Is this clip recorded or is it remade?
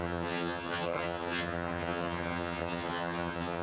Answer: remade